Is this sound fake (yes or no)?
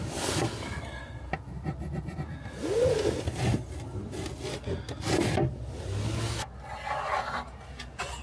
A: no